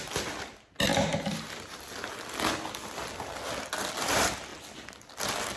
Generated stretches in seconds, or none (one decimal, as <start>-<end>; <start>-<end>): none